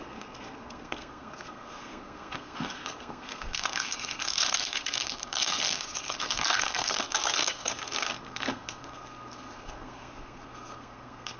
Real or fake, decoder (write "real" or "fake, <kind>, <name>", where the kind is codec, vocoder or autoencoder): fake, codec, SNAC